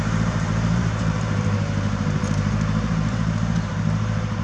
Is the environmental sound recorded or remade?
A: remade